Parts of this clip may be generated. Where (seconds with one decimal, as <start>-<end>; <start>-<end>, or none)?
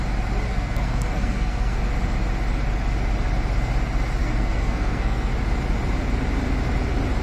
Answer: 0.5-1.8; 4.2-5.3